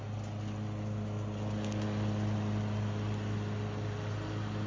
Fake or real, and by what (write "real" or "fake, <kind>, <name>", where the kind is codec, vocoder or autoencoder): real